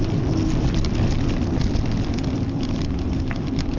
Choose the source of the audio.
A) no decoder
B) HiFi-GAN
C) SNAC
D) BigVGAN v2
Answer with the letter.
A